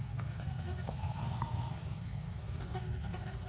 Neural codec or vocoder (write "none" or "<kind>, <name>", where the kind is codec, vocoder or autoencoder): codec, SNAC